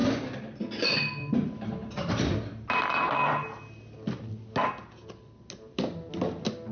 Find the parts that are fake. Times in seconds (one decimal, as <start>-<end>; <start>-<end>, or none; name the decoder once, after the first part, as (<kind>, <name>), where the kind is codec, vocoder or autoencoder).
none